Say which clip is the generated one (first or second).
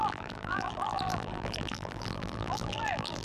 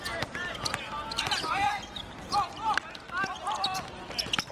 first